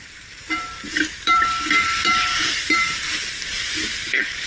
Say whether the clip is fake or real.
fake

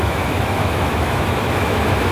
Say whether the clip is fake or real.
fake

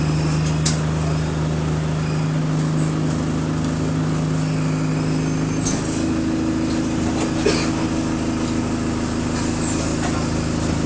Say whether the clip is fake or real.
real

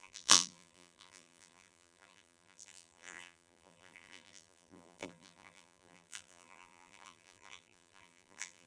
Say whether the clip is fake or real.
fake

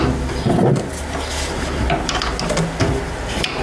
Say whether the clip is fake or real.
real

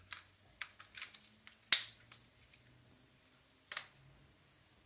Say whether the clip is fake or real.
real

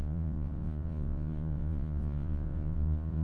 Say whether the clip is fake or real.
fake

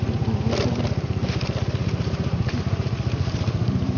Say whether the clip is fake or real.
fake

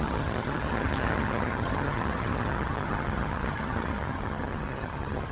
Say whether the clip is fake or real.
fake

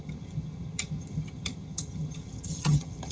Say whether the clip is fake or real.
fake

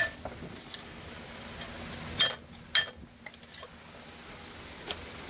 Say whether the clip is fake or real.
real